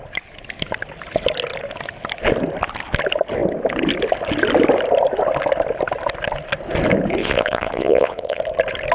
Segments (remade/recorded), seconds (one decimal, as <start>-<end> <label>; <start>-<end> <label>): 0.0-7.2 recorded; 7.2-8.4 remade; 8.4-8.9 recorded